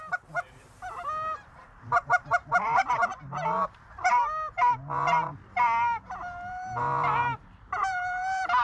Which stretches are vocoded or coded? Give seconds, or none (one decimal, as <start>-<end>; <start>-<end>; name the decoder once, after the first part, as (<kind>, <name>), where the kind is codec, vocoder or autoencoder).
0.0-8.6 (vocoder, BigVGAN v2)